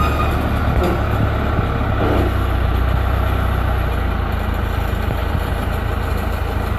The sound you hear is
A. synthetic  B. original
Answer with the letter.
B